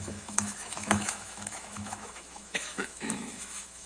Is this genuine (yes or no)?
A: no